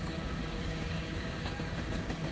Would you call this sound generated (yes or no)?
yes